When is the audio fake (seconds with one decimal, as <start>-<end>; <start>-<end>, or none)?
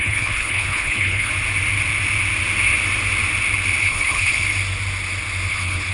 0.0-1.3; 3.8-4.3; 5.5-5.9